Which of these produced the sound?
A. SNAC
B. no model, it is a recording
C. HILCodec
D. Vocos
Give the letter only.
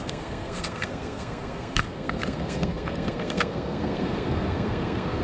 A